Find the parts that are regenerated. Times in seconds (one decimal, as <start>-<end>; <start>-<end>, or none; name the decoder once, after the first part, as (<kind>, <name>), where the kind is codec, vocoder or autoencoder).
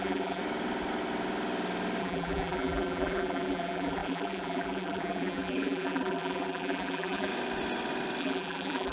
0.0-0.4 (vocoder, BigVGAN v2); 2.0-7.3; 8.2-8.9